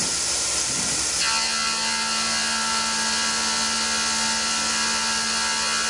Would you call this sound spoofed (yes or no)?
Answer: no